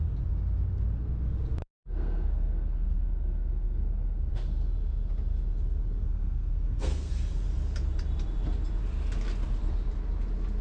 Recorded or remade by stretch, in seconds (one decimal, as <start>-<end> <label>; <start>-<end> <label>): 0.0-1.6 recorded; 1.6-4.3 remade; 4.3-6.0 recorded; 6.0-7.1 remade; 7.1-10.6 recorded